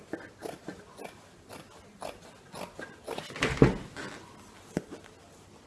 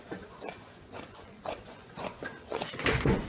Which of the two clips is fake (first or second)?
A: second